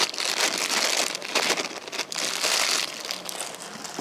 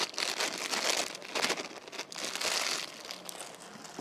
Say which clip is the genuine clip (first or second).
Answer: second